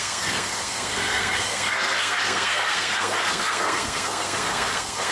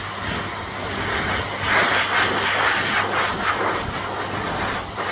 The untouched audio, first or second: second